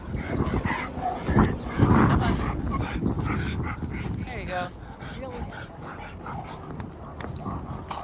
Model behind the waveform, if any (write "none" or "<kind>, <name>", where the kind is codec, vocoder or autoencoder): none